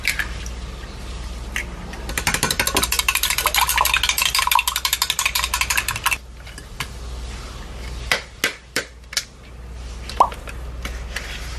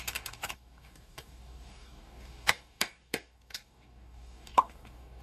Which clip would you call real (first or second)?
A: first